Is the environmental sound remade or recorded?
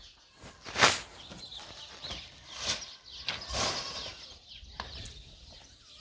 recorded